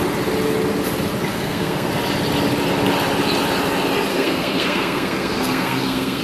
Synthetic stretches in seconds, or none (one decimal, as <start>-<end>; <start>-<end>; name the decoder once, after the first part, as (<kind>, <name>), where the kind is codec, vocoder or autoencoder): 1.3-1.9 (codec, SNAC); 4.1-6.2